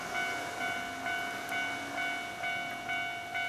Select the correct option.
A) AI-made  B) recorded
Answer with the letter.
B